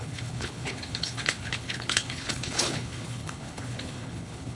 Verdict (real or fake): fake